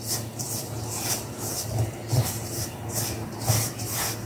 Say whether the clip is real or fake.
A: real